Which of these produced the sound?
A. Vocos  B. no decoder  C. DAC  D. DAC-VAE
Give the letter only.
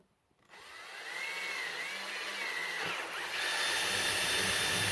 B